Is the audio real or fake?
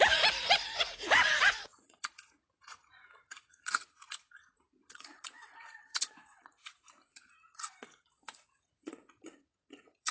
fake